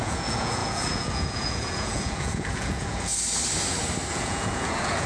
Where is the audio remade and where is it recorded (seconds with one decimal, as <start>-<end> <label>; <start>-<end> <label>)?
0.0-3.1 remade; 3.1-4.1 recorded; 4.1-5.1 remade